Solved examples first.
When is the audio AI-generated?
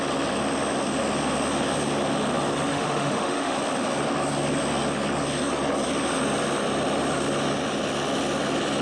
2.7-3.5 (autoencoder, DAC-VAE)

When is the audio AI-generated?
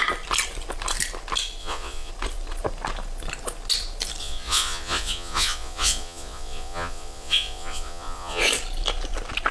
1.6-2.1 (vocoder, Vocos); 4.2-8.4